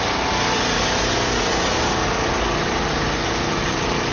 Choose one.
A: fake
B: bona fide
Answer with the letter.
B